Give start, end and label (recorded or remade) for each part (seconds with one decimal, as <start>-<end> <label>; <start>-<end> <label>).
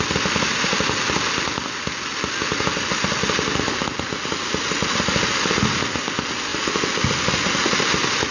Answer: 0.0-8.3 recorded